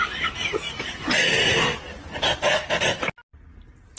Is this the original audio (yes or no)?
yes